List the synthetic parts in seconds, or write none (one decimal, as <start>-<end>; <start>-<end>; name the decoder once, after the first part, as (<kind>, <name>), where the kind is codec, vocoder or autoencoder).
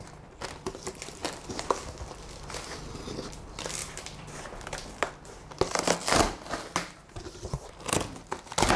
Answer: none